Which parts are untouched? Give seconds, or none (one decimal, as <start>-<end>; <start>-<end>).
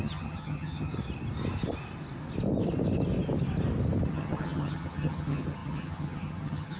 0.9-4.1